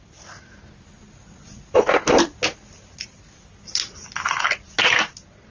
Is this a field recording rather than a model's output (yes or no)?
yes